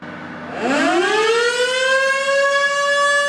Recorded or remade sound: recorded